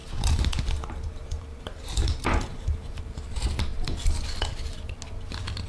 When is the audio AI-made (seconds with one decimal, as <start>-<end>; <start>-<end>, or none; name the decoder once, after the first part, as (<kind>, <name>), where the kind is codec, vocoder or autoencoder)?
0.0-3.0 (vocoder, BigVGAN v2)